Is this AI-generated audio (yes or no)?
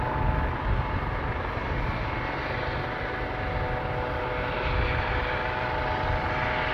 no